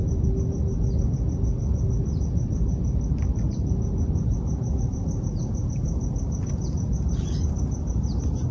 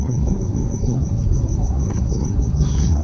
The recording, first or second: first